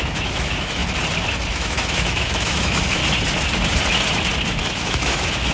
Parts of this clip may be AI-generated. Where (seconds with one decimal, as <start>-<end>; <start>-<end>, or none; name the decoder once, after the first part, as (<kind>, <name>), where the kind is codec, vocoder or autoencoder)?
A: 0.0-0.8 (autoencoder, DAC-VAE); 1.5-3.0; 4.6-5.5